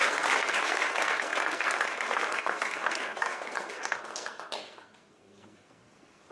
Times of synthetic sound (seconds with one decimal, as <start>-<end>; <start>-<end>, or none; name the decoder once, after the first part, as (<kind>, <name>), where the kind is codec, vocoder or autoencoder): 0.0-6.3 (codec, SNAC)